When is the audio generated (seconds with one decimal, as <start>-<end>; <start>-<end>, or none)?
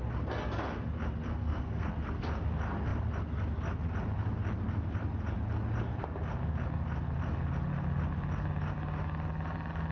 1.3-1.9